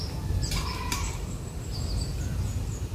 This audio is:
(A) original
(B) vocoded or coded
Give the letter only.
B